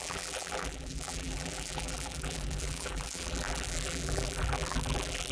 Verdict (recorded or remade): remade